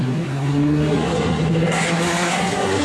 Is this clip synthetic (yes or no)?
yes